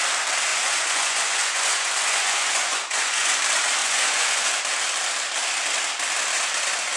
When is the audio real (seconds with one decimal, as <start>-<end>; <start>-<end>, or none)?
0.0-0.5; 3.4-3.8; 4.6-7.0